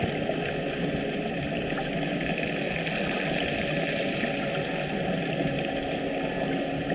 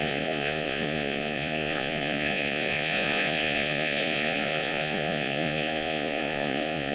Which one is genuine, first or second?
first